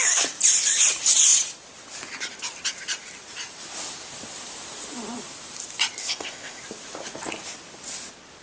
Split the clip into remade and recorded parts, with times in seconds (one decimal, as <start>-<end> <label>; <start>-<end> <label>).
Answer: 0.0-6.0 recorded; 6.0-6.6 remade; 6.6-8.4 recorded